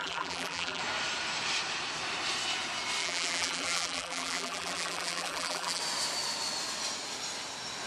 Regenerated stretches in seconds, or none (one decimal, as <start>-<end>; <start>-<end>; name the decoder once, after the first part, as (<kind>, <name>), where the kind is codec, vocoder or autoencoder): 0.0-0.8 (vocoder, BigVGAN v2); 3.0-5.8